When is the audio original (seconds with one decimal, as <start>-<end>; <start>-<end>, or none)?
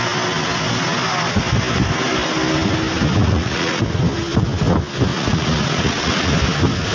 0.0-3.2; 3.8-5.1; 6.3-6.9